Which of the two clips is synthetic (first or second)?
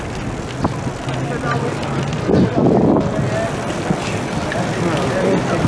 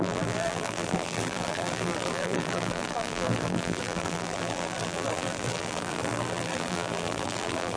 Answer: second